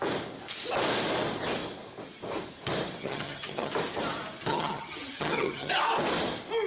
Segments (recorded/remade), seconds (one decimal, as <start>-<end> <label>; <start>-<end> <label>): 0.0-3.0 recorded; 3.0-3.7 remade; 3.7-4.5 recorded; 4.5-5.7 remade; 5.7-6.7 recorded